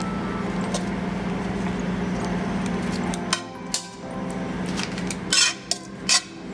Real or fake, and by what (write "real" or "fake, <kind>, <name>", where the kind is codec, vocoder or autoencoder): real